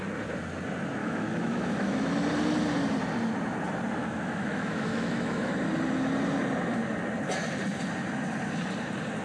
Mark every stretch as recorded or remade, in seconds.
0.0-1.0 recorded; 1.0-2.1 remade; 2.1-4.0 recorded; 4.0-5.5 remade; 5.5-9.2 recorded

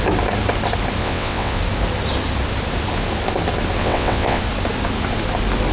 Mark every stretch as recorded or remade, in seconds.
0.0-1.0 recorded; 1.0-1.6 remade; 1.6-3.8 recorded; 3.8-4.4 remade; 4.4-5.7 recorded

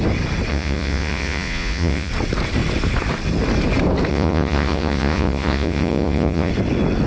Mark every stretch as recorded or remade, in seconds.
0.0-0.5 recorded; 0.5-2.1 remade; 2.1-4.1 recorded; 4.1-6.5 remade; 6.5-7.1 recorded

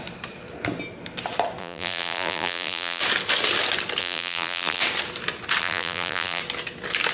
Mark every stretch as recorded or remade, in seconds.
0.0-1.6 recorded; 1.6-3.0 remade; 3.0-4.0 recorded; 4.0-4.8 remade; 4.8-5.6 recorded; 5.6-6.4 remade; 6.4-7.1 recorded